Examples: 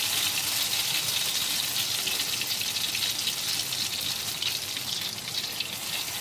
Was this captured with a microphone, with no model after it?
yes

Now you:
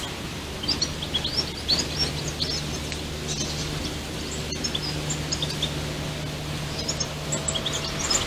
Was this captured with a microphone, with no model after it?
yes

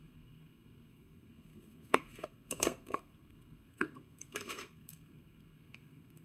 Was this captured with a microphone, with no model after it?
no